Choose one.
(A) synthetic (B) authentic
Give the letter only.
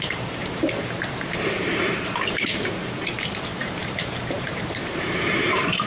A